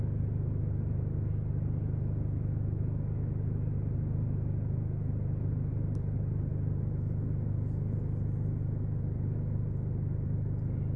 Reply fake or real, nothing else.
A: real